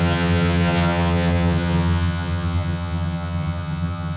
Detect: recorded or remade remade